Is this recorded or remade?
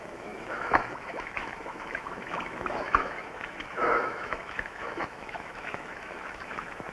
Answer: remade